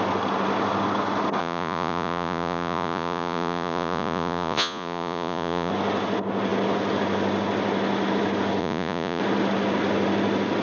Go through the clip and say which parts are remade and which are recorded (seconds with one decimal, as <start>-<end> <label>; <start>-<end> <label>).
0.0-1.4 recorded; 1.4-5.7 remade; 5.7-8.6 recorded; 8.6-9.2 remade; 9.2-10.6 recorded